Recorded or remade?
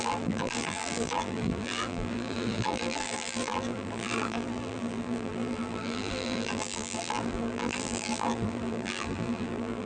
remade